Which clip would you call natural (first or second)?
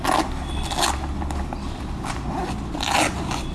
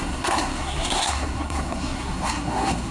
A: first